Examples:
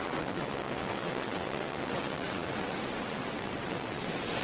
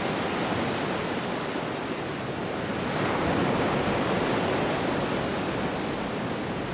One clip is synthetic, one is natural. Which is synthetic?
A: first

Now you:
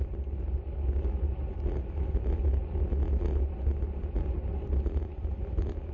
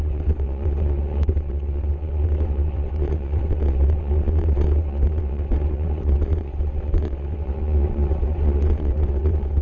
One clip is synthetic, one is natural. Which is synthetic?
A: second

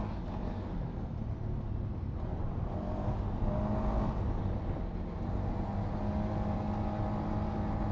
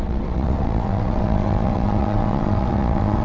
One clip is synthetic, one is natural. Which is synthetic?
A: second